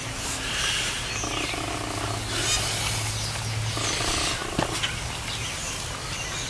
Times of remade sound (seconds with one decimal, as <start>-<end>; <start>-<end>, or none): none